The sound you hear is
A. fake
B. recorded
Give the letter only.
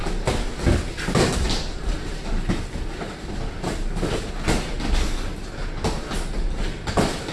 B